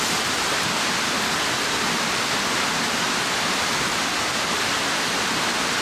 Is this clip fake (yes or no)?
no